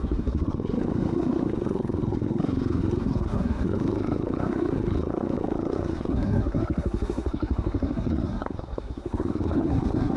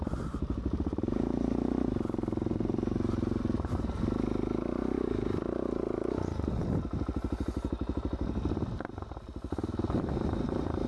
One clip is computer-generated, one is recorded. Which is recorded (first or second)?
second